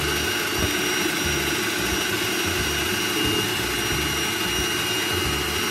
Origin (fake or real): real